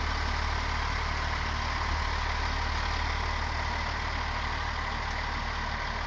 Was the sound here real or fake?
real